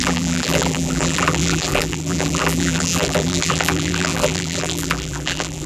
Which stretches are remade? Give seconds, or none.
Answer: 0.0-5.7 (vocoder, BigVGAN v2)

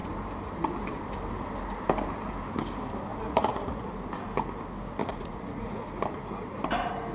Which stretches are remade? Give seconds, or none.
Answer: 3.1-3.9 (vocoder, Vocos); 5.0-5.9

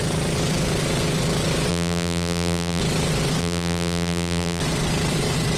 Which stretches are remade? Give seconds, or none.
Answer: 1.7-2.8 (vocoder, BigVGAN v2); 3.4-4.6